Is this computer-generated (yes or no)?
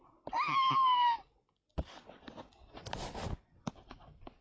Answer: no